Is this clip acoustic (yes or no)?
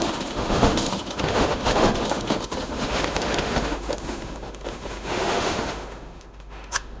no